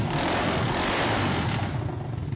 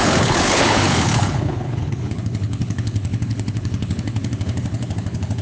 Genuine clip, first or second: first